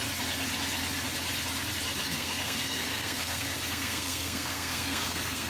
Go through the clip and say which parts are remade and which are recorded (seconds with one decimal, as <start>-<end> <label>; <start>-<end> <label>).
0.0-2.0 recorded; 2.0-5.5 remade